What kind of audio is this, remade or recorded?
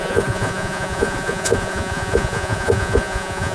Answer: remade